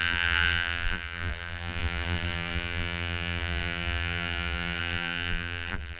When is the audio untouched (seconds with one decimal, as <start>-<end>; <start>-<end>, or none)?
none

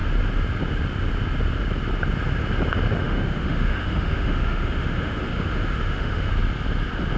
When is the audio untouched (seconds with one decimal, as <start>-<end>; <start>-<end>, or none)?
0.0-3.0; 6.3-7.2

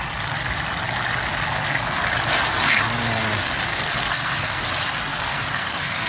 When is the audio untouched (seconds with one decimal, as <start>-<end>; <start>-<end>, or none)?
0.0-3.7; 4.6-5.1

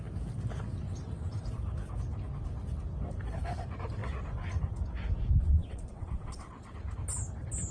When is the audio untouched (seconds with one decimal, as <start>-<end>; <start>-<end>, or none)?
0.0-5.4; 6.5-7.7

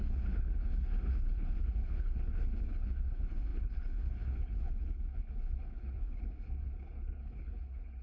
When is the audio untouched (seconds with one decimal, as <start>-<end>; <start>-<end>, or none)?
none

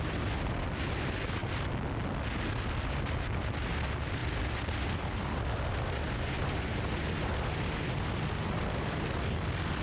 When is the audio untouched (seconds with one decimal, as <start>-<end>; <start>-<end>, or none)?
0.0-9.8